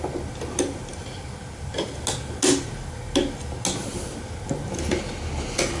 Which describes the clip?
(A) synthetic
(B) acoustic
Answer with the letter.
B